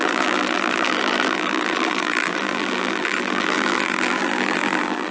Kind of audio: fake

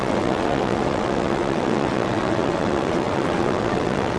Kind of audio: fake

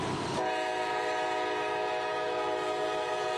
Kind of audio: real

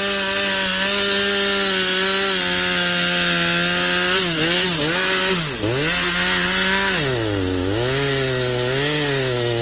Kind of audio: real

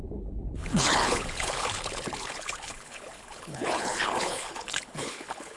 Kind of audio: fake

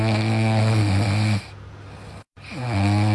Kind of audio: real